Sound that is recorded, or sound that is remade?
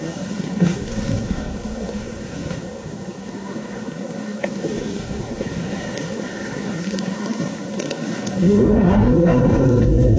remade